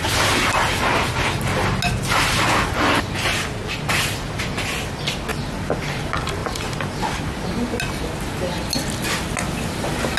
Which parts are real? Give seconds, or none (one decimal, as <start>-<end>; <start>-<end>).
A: 0.0-10.2